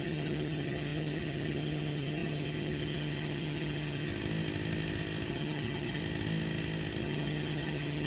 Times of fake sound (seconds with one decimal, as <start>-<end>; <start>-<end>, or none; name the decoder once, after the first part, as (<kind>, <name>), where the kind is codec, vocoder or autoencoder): 0.0-4.1 (vocoder, HiFi-GAN); 5.3-6.0; 7.0-8.1